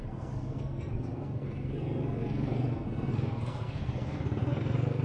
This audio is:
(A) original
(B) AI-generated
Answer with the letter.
B